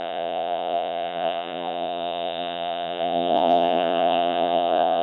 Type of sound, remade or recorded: remade